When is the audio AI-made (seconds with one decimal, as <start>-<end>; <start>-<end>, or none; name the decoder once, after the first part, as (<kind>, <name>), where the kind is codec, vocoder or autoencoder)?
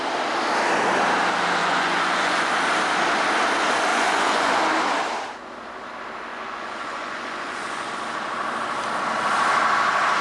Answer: 1.6-2.5 (vocoder, Vocos); 3.9-4.6; 6.3-7.9